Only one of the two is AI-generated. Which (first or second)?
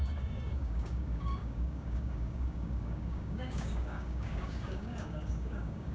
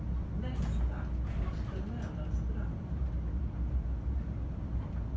first